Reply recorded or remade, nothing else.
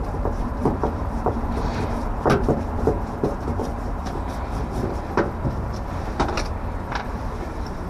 remade